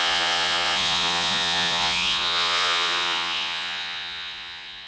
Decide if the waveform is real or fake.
fake